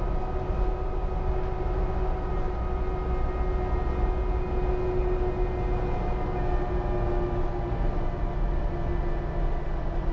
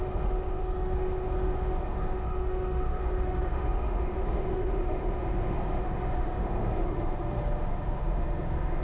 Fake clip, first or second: second